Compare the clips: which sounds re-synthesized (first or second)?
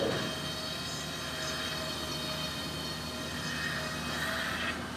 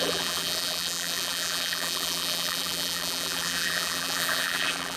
second